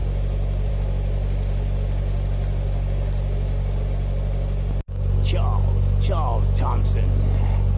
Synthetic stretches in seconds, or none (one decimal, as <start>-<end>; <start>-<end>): none